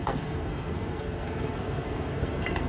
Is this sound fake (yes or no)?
yes